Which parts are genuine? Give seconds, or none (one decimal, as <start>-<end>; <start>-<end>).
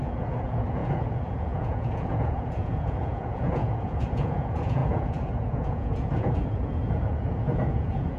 none